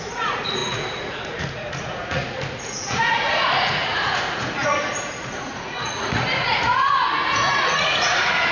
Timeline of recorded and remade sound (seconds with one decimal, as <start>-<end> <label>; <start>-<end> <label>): 0.0-8.5 remade

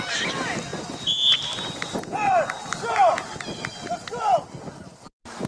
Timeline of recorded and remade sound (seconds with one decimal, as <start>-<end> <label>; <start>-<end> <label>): 0.0-5.5 recorded

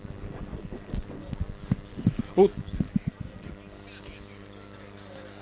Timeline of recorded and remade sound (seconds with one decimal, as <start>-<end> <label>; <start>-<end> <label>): 0.0-1.9 recorded; 1.9-3.1 remade; 3.1-5.4 recorded

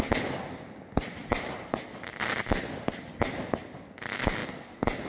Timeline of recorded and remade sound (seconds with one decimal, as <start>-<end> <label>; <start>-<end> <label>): 0.0-5.1 recorded